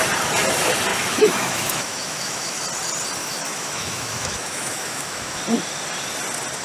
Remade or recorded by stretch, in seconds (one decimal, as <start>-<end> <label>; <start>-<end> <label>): 0.0-0.9 recorded; 0.9-2.6 remade; 2.6-3.2 recorded; 3.2-5.4 remade; 5.4-6.6 recorded